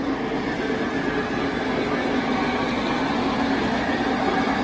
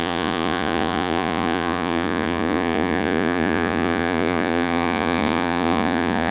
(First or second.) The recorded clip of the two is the first